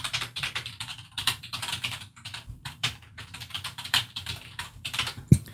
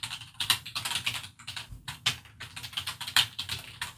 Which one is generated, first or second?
first